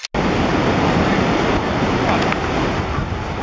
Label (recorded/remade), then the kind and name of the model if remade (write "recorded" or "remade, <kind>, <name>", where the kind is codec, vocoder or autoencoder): recorded